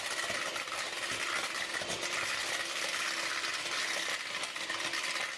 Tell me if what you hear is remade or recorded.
recorded